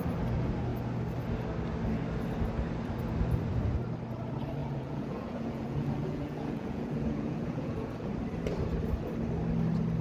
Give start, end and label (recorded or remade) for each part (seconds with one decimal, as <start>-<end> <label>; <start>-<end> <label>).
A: 0.0-4.6 recorded; 4.6-8.1 remade; 8.1-10.0 recorded